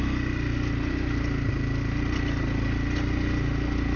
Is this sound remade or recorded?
recorded